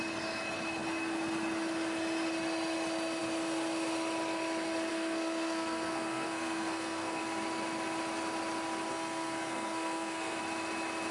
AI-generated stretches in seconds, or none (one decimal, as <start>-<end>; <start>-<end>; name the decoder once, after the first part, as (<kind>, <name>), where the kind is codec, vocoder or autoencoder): 4.9-7.2 (codec, SNAC); 8.9-10.4